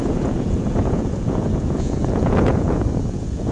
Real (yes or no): no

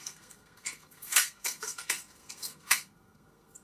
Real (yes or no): no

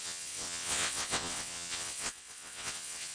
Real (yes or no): no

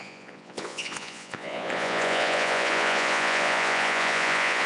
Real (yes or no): no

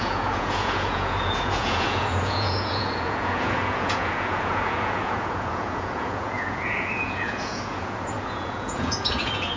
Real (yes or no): no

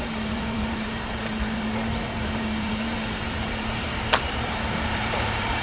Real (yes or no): no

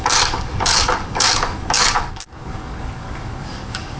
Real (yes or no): no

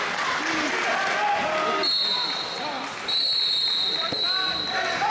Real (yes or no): yes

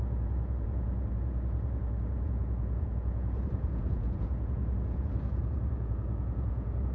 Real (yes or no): no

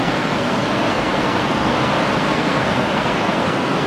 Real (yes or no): no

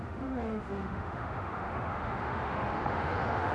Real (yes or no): no